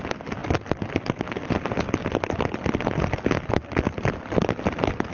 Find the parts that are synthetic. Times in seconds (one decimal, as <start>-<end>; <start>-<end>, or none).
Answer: none